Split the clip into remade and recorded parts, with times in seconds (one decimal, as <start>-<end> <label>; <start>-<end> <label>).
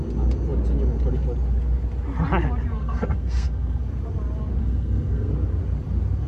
0.0-2.7 recorded; 2.7-3.8 remade; 3.8-4.6 recorded; 4.6-5.3 remade; 5.3-6.3 recorded